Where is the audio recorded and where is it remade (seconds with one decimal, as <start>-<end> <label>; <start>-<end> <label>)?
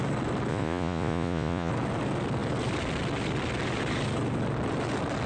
0.0-0.5 recorded; 0.5-1.7 remade; 1.7-5.3 recorded